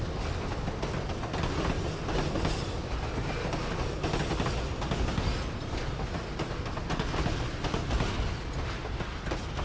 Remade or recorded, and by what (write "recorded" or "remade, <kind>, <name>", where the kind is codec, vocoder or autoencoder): recorded